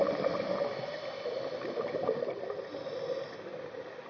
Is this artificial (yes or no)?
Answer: no